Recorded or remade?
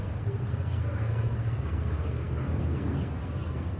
remade